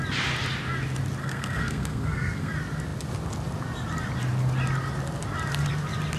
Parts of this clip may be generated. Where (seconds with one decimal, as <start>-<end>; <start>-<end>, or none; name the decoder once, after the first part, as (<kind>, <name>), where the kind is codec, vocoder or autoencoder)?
1.2-2.5 (codec, SNAC)